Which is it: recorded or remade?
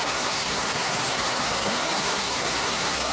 remade